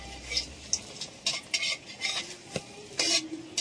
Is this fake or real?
real